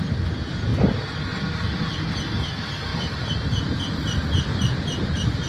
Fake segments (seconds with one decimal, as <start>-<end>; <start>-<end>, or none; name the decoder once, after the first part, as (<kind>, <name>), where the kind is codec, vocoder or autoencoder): 0.0-0.7 (vocoder, BigVGAN v2); 1.4-5.5